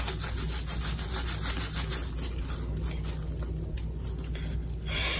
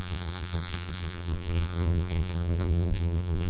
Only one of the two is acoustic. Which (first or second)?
first